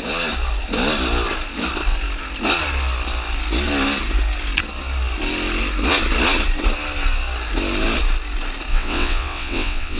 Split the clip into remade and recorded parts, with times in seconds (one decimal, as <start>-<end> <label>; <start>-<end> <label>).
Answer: 0.0-8.7 recorded; 8.7-10.0 remade